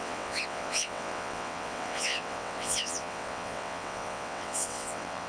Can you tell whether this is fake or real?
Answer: fake